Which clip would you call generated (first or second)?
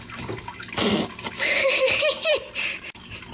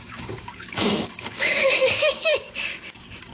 second